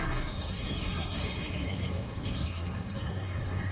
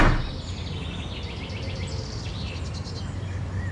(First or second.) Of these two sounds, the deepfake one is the first